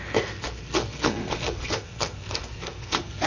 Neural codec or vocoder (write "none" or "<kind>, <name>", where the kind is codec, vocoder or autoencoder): codec, SNAC